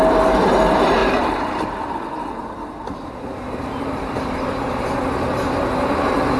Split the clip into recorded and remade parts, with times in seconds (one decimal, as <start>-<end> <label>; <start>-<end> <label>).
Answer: 0.0-2.8 recorded; 2.8-5.0 remade; 5.0-6.4 recorded